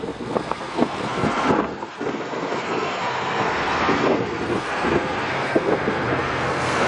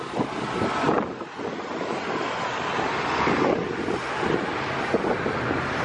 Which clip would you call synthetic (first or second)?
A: first